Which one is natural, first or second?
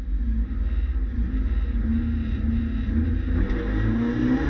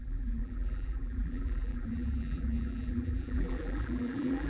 first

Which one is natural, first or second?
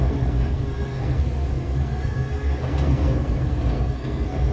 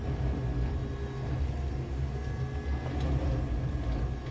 second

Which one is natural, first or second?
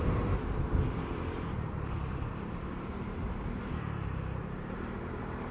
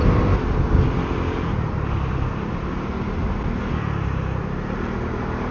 second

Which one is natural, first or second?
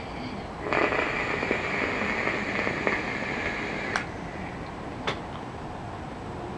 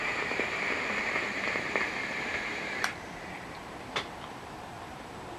first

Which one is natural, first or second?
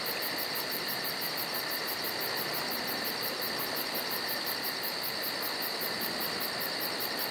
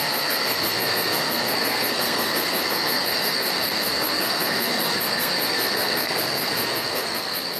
first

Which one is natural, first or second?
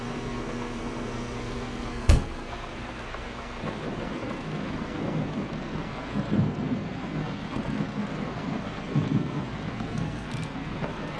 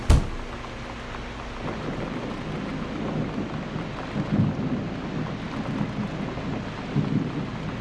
second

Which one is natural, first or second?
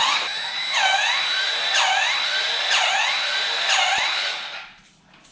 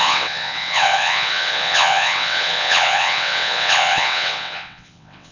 first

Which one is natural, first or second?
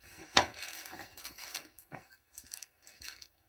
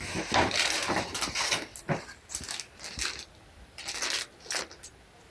second